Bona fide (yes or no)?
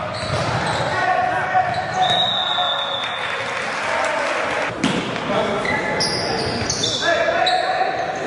yes